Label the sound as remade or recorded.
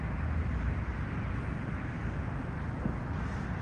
recorded